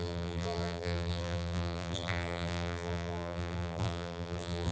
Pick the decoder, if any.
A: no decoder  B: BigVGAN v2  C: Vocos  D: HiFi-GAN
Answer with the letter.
B